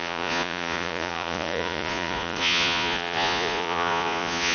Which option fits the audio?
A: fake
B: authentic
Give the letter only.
A